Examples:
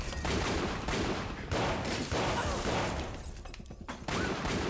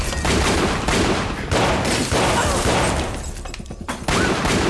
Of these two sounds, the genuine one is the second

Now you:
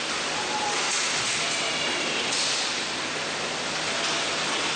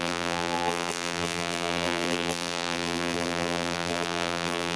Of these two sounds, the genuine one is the first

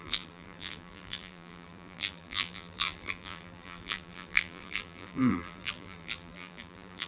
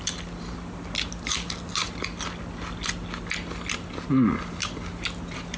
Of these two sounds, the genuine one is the second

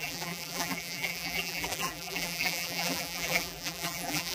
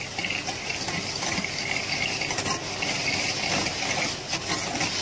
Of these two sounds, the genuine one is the second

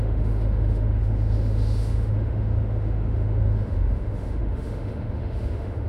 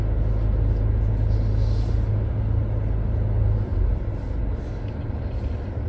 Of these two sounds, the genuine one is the second